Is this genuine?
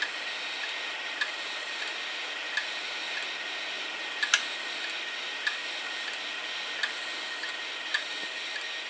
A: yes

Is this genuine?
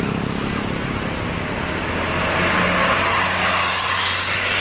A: yes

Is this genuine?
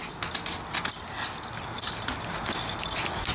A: yes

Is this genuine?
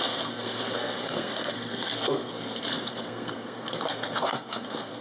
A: no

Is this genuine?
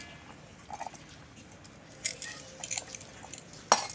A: yes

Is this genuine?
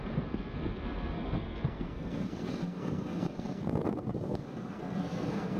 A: no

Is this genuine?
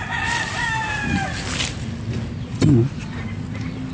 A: yes